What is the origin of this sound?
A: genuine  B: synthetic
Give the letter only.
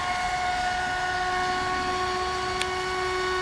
A